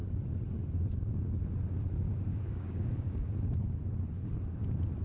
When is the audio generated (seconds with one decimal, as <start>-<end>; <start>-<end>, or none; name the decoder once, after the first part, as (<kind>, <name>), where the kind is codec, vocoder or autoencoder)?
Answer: 2.3-3.3 (codec, DAC)